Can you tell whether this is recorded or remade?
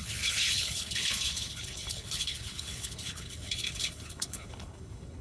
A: remade